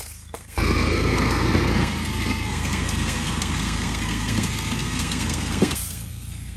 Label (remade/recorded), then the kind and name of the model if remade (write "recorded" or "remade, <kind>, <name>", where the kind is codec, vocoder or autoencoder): remade, codec, SNAC